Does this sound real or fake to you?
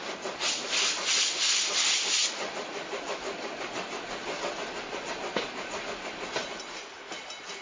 real